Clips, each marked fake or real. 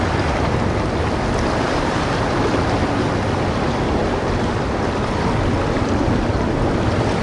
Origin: real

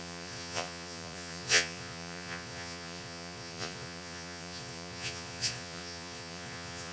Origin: fake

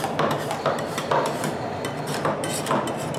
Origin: fake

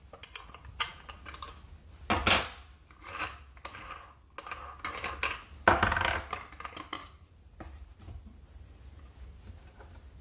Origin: real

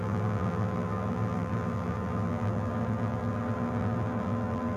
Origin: fake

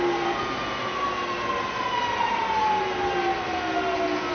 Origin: real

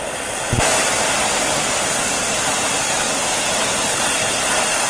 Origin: real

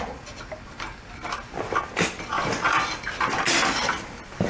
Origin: real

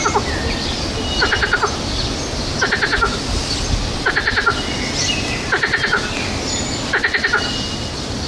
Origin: real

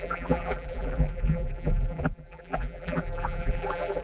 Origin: fake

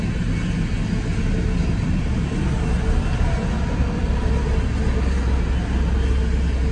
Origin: real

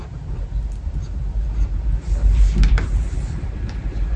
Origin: real